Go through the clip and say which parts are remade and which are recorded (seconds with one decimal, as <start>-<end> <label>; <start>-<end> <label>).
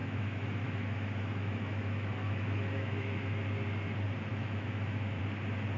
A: 0.0-3.5 remade; 3.5-4.3 recorded; 4.3-5.2 remade; 5.2-5.8 recorded